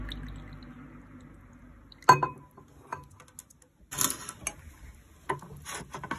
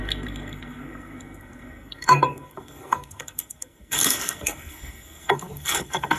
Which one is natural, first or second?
first